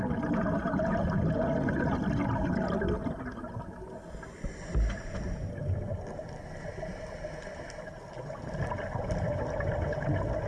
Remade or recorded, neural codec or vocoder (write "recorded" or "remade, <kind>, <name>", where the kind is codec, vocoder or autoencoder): recorded